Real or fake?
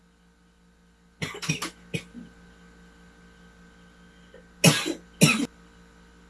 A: real